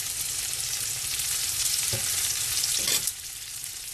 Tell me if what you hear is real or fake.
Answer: fake